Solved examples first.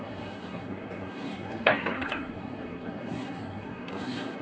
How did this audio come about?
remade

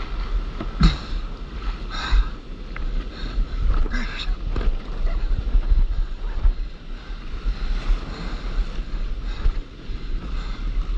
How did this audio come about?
recorded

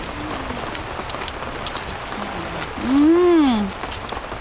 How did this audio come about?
recorded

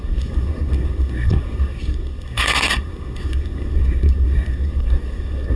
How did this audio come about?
remade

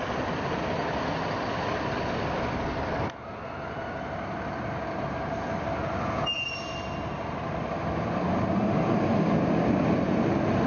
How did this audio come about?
recorded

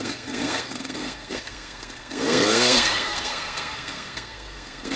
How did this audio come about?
remade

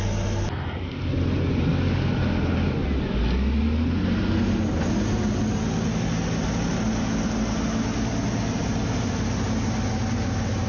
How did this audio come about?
recorded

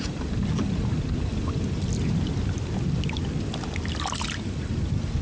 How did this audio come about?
recorded